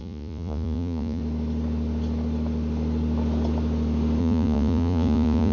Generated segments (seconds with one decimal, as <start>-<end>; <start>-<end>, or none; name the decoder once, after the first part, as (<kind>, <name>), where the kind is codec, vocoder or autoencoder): 0.0-1.2 (vocoder, Vocos); 4.2-5.5